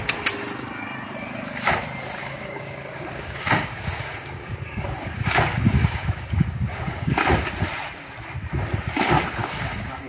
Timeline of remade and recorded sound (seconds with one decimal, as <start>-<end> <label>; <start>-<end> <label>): 0.0-2.2 recorded; 2.2-7.2 remade; 7.2-9.4 recorded; 9.4-10.1 remade